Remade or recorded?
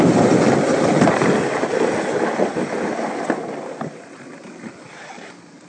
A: recorded